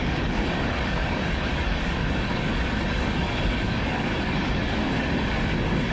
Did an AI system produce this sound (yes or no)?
yes